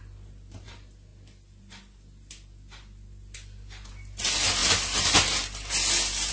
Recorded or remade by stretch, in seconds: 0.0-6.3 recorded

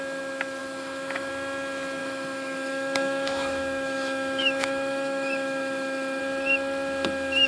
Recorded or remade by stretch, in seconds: 0.0-0.6 recorded; 0.6-1.3 remade; 1.3-2.0 recorded; 2.0-6.2 remade; 6.2-7.5 recorded

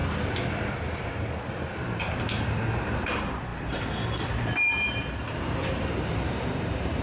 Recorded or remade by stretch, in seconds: 0.0-1.8 recorded; 1.8-7.0 remade

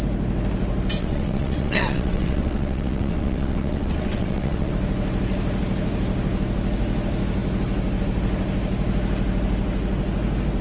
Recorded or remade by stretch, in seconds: 0.0-1.0 recorded; 1.0-4.7 remade; 4.7-10.6 recorded

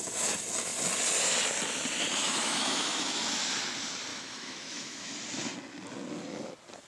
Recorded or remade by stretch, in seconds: 0.0-2.2 recorded; 2.2-3.2 remade; 3.2-4.1 recorded; 4.1-5.2 remade; 5.2-6.9 recorded

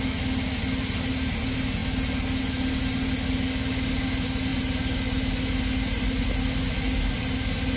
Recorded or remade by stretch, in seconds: 0.0-7.8 recorded

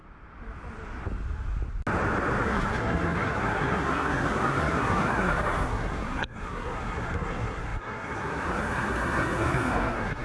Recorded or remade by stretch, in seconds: 0.0-2.4 recorded; 2.4-10.2 remade